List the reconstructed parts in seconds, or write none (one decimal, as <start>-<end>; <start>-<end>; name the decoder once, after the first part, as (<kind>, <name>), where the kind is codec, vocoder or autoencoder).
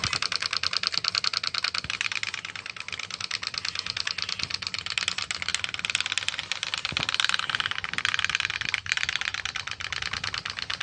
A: none